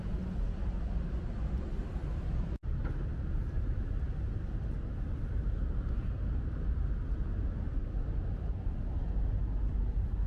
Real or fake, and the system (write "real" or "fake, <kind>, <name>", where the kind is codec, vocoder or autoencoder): real